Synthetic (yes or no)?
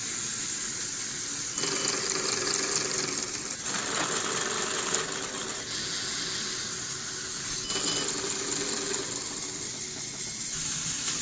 no